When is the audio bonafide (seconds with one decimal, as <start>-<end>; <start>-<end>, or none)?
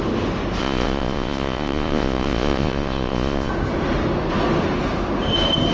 0.0-0.6; 3.5-5.7